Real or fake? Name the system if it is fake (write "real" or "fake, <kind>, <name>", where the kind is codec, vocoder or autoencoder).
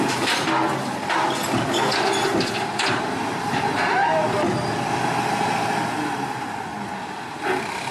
real